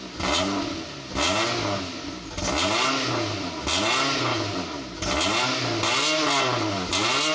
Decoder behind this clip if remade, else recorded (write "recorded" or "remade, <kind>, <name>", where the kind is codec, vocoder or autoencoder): recorded